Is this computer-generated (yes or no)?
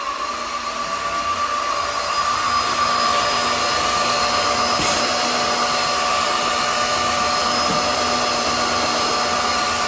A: no